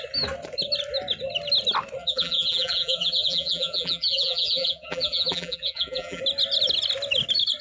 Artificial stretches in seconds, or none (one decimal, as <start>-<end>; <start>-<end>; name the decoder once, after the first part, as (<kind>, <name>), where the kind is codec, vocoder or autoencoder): 2.0-6.2 (vocoder, BigVGAN v2)